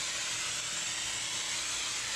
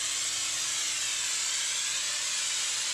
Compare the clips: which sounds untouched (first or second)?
second